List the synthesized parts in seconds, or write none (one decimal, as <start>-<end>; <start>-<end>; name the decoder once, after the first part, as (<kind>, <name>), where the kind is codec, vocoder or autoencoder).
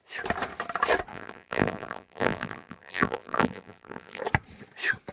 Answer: 1.1-4.2 (vocoder, BigVGAN v2)